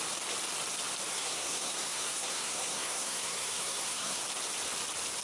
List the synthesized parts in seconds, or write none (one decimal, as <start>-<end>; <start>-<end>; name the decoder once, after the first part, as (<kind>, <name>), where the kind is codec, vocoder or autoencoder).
1.1-4.2 (codec, SNAC)